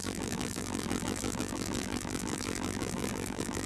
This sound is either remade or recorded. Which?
remade